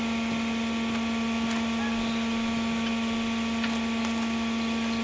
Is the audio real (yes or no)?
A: yes